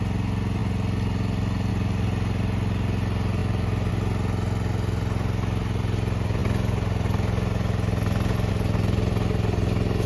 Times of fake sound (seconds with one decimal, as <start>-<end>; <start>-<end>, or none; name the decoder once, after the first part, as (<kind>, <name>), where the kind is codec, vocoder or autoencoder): none